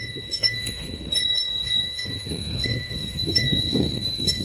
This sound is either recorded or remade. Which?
remade